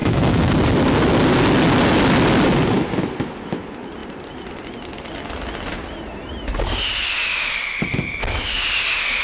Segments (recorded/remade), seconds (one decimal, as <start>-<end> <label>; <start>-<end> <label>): 0.0-0.5 remade; 0.5-9.2 recorded